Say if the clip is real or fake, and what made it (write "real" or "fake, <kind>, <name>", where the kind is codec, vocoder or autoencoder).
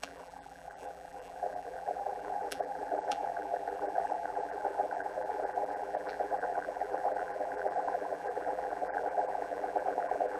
fake, vocoder, BigVGAN v2